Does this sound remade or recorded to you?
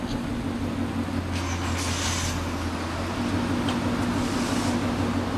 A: recorded